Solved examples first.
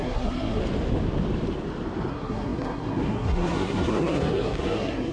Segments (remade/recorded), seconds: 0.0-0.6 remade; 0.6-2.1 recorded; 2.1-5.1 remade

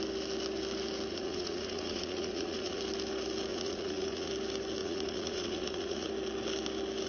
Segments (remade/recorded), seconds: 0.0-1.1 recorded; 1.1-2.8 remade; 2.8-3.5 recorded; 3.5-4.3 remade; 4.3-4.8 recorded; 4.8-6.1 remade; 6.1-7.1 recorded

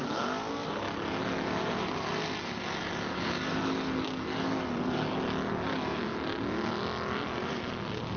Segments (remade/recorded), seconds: 0.0-8.2 recorded